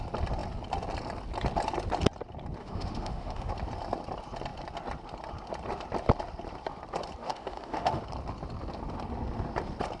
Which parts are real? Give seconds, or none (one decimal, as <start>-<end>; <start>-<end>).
0.0-2.6; 3.5-7.2; 8.0-10.0